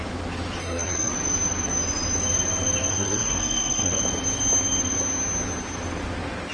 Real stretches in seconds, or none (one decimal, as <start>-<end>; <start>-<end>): 0.0-0.6; 1.1-2.9; 4.0-6.5